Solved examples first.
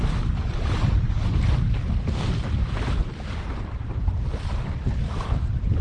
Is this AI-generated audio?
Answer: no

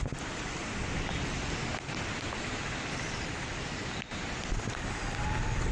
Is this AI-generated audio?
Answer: no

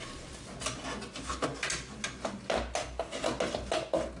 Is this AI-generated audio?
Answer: no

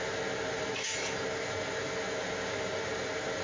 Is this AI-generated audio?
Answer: no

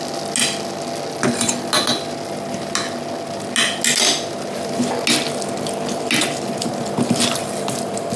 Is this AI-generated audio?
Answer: no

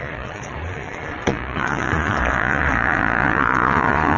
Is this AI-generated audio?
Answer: yes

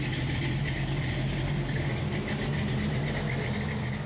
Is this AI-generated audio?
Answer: no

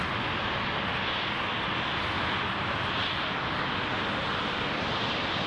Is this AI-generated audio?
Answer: no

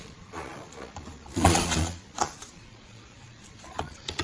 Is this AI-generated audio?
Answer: yes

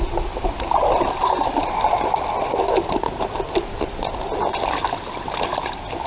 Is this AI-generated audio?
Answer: no